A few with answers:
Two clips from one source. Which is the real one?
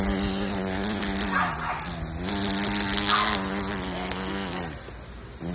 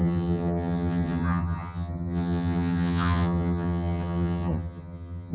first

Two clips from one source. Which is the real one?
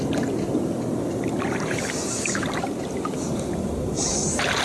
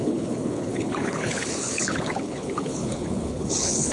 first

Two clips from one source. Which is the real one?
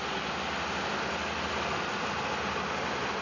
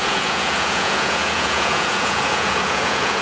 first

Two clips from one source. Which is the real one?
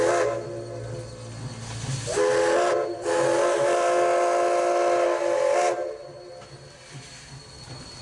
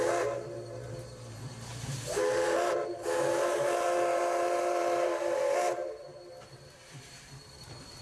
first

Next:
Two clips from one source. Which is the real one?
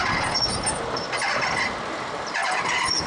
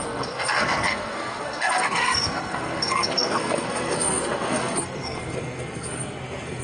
first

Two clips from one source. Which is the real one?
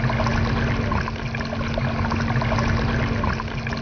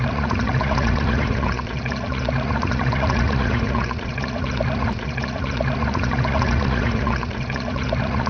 first